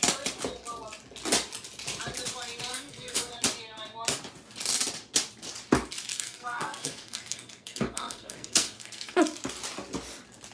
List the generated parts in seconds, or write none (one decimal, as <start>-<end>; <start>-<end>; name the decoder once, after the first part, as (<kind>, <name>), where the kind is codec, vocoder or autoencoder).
2.7-3.3 (codec, SNAC); 6.1-9.2